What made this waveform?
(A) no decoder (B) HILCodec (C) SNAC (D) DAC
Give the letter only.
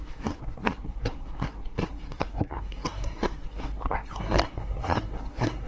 C